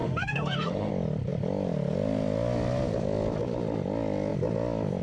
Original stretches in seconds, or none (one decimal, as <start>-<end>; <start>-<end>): 0.9-5.0